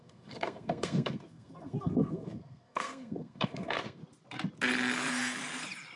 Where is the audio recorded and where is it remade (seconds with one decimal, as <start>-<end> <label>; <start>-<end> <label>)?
0.0-4.0 remade; 4.0-6.0 recorded